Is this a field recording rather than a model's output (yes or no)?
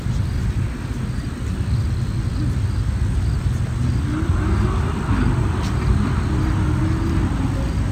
yes